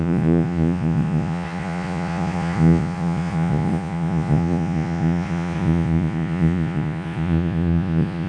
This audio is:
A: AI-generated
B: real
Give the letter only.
A